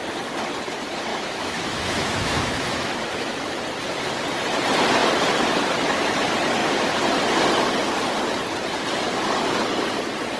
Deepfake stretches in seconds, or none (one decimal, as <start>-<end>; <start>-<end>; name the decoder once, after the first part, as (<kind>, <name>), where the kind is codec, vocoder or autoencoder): 1.1-3.6 (autoencoder, DAC-VAE)